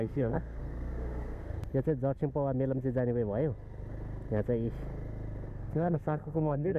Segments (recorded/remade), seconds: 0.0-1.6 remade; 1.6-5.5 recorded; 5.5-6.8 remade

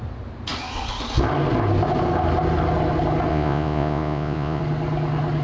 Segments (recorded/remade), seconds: 0.0-3.3 recorded; 3.3-4.6 remade; 4.6-5.4 recorded

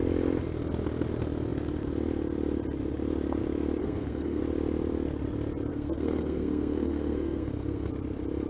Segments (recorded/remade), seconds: 0.0-3.8 recorded; 3.8-4.4 remade; 4.4-5.7 recorded; 5.7-7.9 remade; 7.9-8.5 recorded

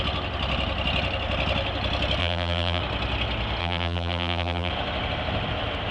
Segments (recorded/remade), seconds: 0.0-2.2 recorded; 2.2-2.8 remade; 2.8-3.6 recorded; 3.6-4.7 remade; 4.7-5.9 recorded

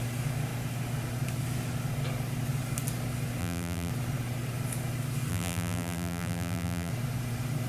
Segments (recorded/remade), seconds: 0.0-3.4 recorded; 3.4-3.9 remade; 3.9-5.3 recorded; 5.3-6.9 remade; 6.9-7.7 recorded

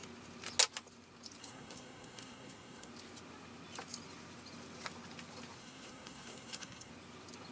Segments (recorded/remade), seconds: 0.0-1.4 recorded; 1.4-2.9 remade; 2.9-5.6 recorded; 5.6-6.9 remade; 6.9-7.5 recorded

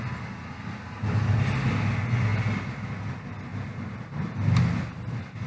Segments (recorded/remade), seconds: 0.0-5.5 recorded

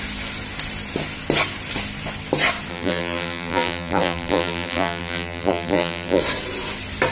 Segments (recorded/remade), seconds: 0.0-2.7 recorded; 2.7-6.2 remade; 6.2-7.1 recorded